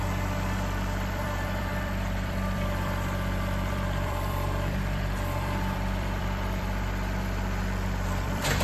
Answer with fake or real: fake